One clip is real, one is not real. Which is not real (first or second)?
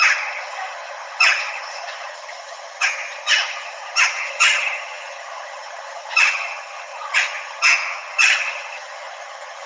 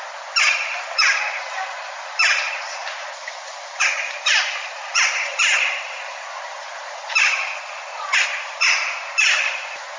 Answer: first